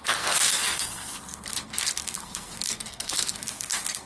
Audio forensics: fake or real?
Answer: fake